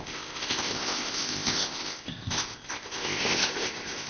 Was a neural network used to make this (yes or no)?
yes